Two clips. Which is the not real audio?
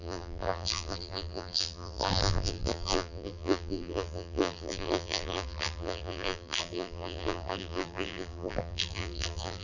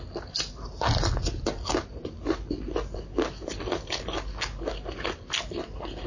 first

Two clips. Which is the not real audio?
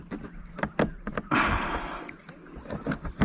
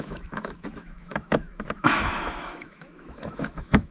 second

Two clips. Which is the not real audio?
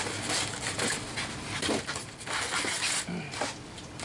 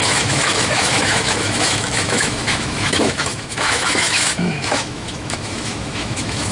second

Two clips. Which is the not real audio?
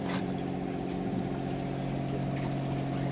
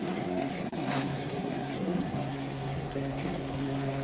second